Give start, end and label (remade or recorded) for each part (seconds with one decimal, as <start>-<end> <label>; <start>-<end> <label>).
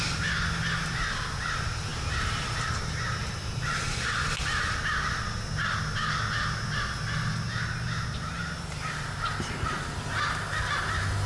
0.0-3.2 recorded; 3.2-4.0 remade; 4.0-11.3 recorded